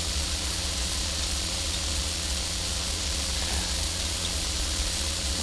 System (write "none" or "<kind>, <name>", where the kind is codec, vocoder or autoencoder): vocoder, Vocos